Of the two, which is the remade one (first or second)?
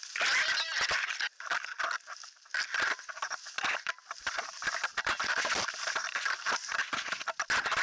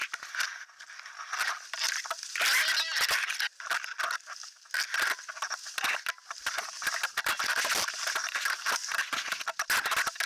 first